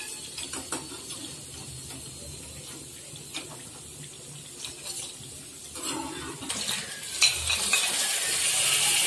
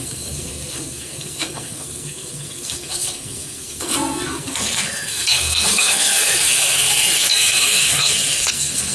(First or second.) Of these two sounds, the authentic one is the first